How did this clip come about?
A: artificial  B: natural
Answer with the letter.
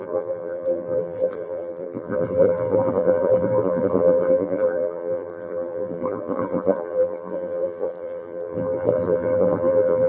A